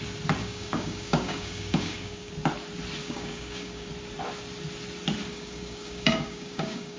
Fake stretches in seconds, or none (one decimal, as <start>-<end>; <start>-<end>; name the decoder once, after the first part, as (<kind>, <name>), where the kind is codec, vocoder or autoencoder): 0.4-2.3 (codec, DAC); 3.0-3.9; 5.3-7.0